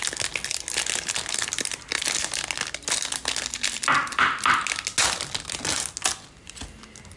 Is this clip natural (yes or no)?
yes